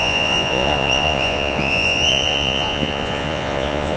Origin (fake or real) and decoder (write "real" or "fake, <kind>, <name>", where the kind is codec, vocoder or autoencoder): fake, vocoder, Vocos